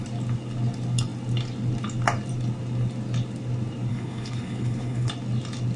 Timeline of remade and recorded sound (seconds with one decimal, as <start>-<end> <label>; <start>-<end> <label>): 0.0-3.9 recorded; 3.9-5.1 remade; 5.1-5.8 recorded